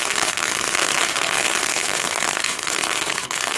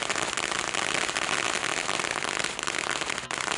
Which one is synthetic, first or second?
first